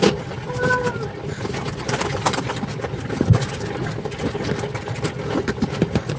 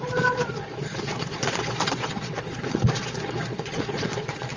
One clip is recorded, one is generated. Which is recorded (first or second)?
first